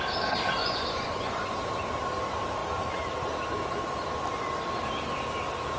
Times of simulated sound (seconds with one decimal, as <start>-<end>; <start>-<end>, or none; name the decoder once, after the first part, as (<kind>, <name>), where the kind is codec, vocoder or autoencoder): 0.6-1.6 (vocoder, Vocos)

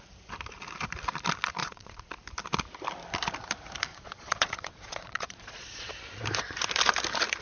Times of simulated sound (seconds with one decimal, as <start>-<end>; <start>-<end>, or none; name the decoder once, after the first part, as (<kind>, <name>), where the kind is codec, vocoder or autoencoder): 1.6-2.1 (vocoder, Vocos); 3.9-5.9

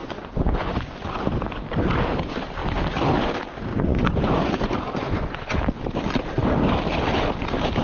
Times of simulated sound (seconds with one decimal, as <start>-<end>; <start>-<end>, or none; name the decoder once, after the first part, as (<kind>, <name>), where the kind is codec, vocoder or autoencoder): 0.0-0.9 (vocoder, Vocos); 3.7-5.6